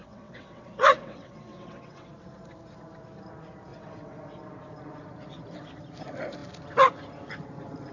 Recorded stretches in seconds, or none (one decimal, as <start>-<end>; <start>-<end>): 2.1-3.7; 4.4-7.9